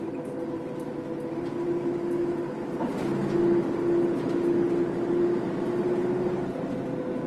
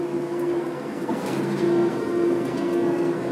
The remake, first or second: second